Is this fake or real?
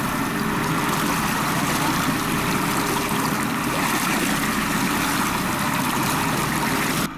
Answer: real